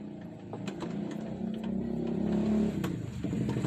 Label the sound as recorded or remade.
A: recorded